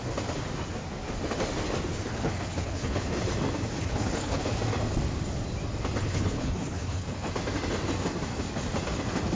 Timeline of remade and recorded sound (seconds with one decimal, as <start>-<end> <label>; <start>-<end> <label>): 0.0-2.1 recorded; 2.1-3.2 remade; 3.2-3.8 recorded; 3.8-4.5 remade; 4.5-6.0 recorded; 6.0-7.3 remade; 7.3-9.3 recorded